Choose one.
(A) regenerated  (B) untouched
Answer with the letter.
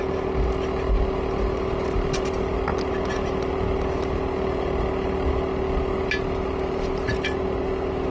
B